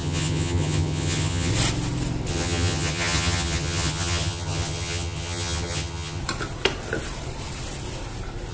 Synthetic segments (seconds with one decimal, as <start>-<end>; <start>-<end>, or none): 0.0-1.5; 2.3-6.2